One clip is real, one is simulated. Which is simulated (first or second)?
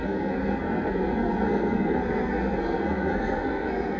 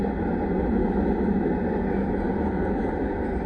first